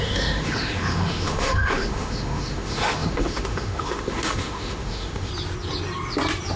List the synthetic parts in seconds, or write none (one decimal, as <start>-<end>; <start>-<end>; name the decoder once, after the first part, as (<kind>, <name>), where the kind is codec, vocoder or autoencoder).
0.0-5.3 (autoencoder, DAC-VAE)